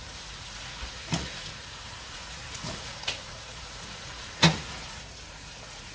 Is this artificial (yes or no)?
yes